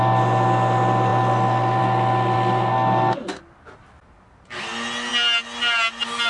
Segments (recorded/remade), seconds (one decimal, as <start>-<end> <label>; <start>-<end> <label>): 0.0-6.3 recorded